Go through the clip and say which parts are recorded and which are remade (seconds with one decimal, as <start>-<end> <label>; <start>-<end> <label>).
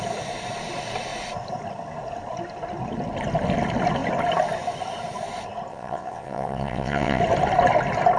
0.0-5.7 recorded; 5.7-7.2 remade; 7.2-8.2 recorded